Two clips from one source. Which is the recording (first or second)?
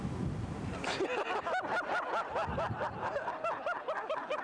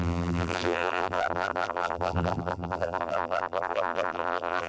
first